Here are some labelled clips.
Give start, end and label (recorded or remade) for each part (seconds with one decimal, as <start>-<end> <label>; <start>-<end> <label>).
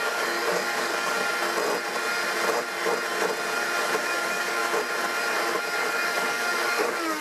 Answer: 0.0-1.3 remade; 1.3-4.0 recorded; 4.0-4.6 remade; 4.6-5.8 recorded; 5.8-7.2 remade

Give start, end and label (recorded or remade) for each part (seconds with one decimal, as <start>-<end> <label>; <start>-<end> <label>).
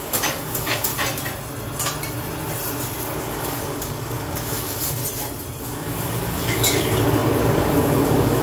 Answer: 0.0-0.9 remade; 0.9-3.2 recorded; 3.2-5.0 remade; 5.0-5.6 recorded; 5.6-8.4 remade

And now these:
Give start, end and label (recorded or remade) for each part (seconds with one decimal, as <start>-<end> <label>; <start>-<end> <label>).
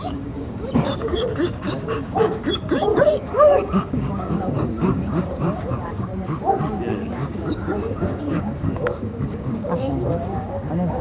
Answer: 0.0-6.1 remade; 6.1-6.9 recorded; 6.9-11.0 remade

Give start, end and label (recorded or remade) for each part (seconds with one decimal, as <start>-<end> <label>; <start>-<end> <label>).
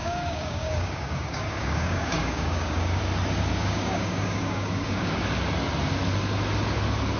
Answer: 0.0-3.0 remade; 3.0-3.5 recorded; 3.5-5.2 remade; 5.2-7.2 recorded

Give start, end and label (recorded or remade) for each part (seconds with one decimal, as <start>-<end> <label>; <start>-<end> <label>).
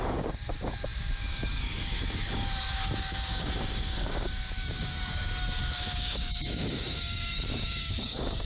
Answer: 0.0-8.4 remade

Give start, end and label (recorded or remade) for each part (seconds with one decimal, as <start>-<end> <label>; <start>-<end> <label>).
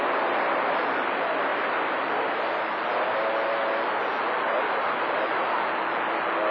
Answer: 0.0-6.5 recorded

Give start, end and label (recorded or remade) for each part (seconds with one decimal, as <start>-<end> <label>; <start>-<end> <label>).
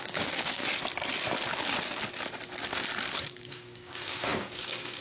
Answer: 0.0-0.6 remade; 0.6-3.2 recorded; 3.2-5.0 remade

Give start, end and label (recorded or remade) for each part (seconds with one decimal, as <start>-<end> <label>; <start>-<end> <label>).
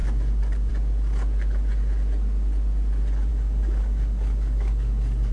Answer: 0.0-0.7 remade; 0.7-3.3 recorded; 3.3-5.3 remade